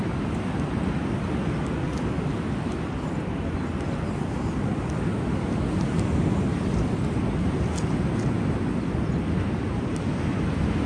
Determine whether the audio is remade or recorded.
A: recorded